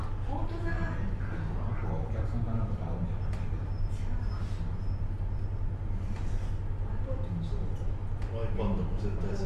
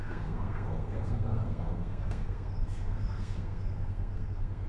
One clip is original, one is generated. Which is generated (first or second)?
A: second